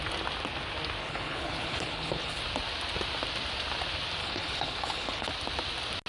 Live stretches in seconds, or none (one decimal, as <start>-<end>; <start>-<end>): 0.0-1.0; 2.4-4.2; 5.3-6.1